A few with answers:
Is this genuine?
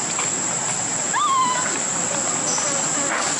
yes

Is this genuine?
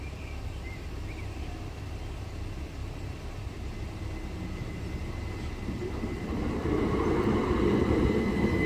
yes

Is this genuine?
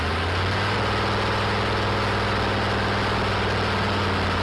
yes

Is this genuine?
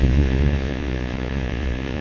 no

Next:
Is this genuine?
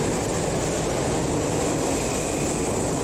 yes